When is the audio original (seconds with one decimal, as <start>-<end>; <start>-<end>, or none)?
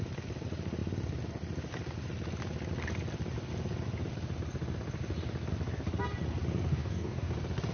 0.0-6.7; 7.3-7.7